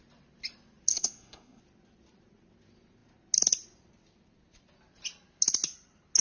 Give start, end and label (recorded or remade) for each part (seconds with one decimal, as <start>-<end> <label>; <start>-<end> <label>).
0.0-0.9 recorded; 0.9-1.6 remade; 1.6-6.2 recorded